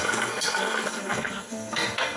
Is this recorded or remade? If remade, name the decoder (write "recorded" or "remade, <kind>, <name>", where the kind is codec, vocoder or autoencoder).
remade, codec, SNAC